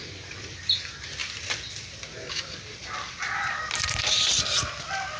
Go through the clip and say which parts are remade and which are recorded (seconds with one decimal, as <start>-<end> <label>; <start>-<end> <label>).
0.0-1.2 remade; 1.2-2.3 recorded; 2.3-5.2 remade